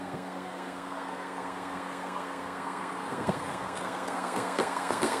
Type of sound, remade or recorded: remade